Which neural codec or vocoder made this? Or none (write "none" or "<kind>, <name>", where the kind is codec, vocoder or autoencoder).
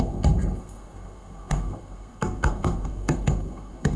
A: codec, SNAC